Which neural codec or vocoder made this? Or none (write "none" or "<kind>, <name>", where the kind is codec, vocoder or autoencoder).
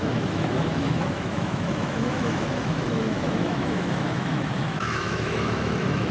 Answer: autoencoder, DAC-VAE